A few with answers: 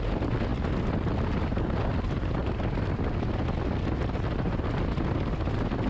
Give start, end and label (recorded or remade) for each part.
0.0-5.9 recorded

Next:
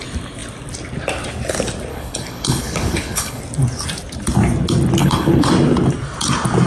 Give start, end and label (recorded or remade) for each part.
0.0-1.9 recorded; 1.9-3.4 remade; 3.4-5.0 recorded; 5.0-5.5 remade; 5.5-6.7 recorded

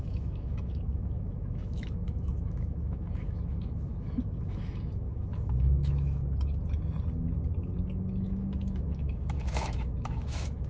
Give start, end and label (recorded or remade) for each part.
0.0-6.2 remade; 6.2-8.1 recorded; 8.1-10.7 remade

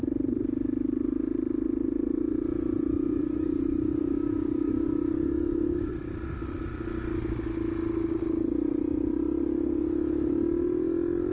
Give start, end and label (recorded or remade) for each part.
0.0-3.2 recorded; 3.2-5.9 remade; 5.9-11.3 recorded

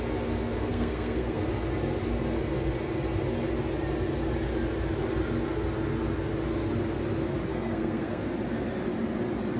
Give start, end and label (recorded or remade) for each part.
0.0-0.7 recorded; 0.7-1.4 remade; 1.4-7.5 recorded; 7.5-8.2 remade; 8.2-9.6 recorded

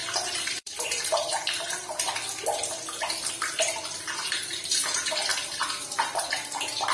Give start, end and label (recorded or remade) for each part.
0.0-1.8 remade; 1.8-3.8 recorded; 3.8-4.8 remade; 4.8-6.9 recorded

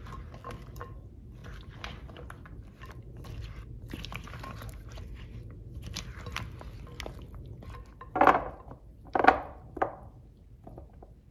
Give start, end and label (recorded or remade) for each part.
0.0-1.4 recorded; 1.4-3.8 remade; 3.8-8.9 recorded; 8.9-9.9 remade; 9.9-11.3 recorded